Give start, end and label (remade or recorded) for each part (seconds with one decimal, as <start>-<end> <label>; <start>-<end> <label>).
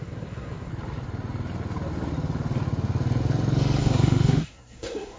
0.0-0.7 remade; 0.7-3.8 recorded; 3.8-5.2 remade